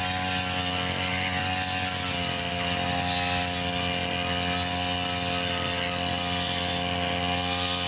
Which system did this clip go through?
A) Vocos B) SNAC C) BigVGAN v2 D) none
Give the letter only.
D